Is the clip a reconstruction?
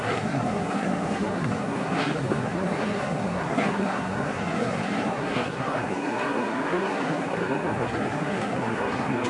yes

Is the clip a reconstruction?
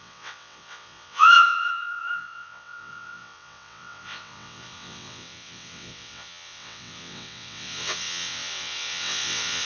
yes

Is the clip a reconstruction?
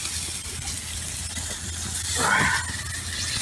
no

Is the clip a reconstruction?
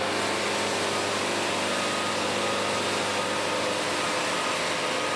no